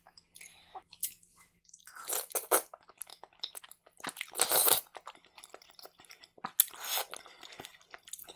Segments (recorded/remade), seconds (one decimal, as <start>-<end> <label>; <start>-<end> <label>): 0.0-0.5 recorded; 0.5-1.8 remade; 1.8-8.4 recorded